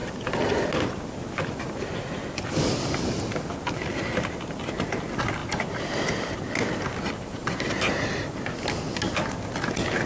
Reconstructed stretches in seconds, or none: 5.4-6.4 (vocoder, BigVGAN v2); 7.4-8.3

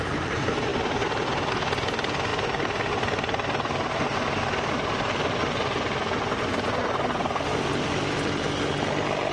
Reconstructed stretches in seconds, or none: 0.7-1.5 (vocoder, BigVGAN v2); 6.8-8.5